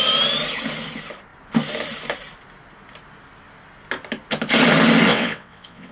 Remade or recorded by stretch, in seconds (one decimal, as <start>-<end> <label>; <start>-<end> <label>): 0.0-5.1 recorded; 5.1-5.9 remade